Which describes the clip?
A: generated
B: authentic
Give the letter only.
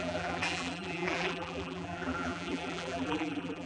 A